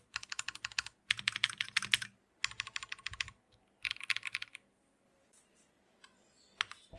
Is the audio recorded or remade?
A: recorded